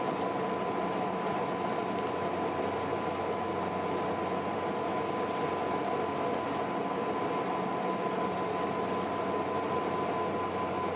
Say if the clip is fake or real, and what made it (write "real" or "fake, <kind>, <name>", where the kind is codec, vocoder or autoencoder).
real